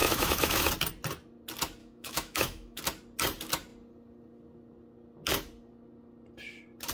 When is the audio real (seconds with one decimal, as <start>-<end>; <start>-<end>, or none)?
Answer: 0.7-1.8; 2.8-6.9